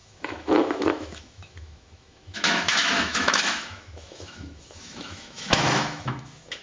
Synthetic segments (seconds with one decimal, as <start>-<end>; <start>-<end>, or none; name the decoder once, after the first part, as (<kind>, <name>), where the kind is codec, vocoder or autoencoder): 0.0-6.6 (autoencoder, DAC-VAE)

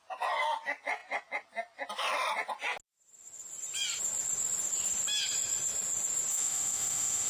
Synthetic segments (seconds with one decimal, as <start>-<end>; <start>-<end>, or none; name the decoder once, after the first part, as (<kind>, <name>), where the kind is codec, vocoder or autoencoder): 6.3-7.3 (autoencoder, DAC-VAE)